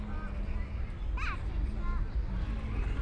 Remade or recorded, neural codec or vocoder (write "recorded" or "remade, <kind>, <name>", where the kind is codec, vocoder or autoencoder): recorded